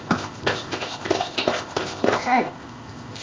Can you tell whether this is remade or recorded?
remade